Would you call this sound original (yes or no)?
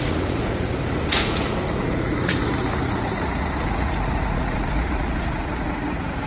no